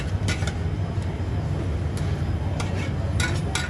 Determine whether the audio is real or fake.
real